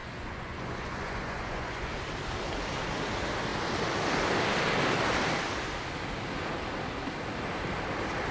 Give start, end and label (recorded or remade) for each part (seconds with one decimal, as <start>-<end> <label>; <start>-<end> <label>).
0.0-1.9 remade; 1.9-8.3 recorded